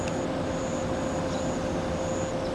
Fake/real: real